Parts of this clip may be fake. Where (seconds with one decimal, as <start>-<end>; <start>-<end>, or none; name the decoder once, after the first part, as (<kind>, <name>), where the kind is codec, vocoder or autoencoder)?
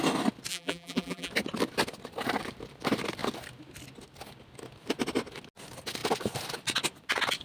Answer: 0.5-1.3 (vocoder, BigVGAN v2)